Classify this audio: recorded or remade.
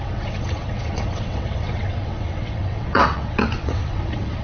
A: remade